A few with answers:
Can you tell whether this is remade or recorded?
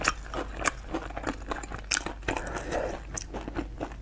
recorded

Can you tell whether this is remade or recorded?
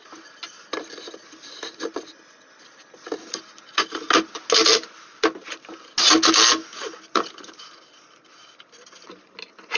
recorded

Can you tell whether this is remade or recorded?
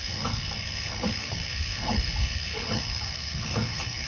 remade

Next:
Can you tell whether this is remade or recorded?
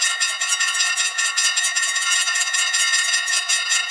remade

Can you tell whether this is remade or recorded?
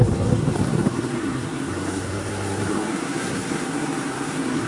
remade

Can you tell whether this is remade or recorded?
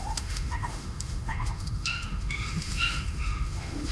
remade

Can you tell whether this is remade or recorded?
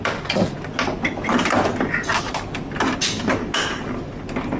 recorded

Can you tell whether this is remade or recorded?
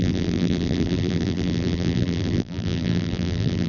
remade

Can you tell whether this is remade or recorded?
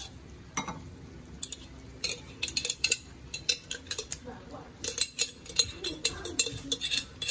recorded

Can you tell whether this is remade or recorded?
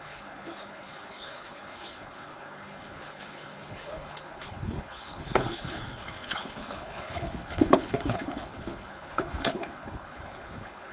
remade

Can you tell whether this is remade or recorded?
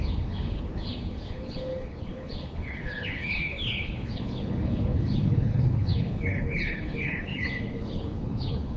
remade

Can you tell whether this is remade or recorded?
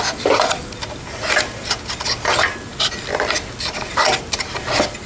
recorded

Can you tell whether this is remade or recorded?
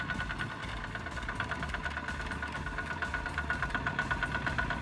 recorded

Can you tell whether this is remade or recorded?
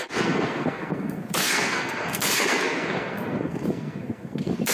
remade